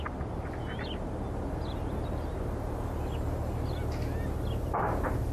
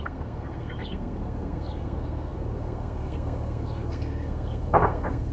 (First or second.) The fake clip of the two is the second